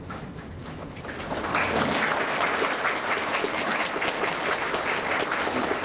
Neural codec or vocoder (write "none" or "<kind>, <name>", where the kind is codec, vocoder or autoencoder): none